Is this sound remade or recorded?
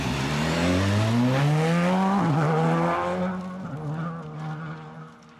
recorded